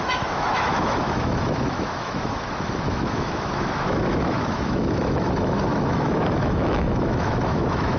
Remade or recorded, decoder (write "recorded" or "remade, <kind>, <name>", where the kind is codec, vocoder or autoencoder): remade, autoencoder, DAC-VAE